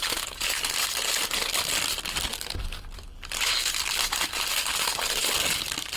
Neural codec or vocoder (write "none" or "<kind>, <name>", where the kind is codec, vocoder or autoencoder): vocoder, BigVGAN v2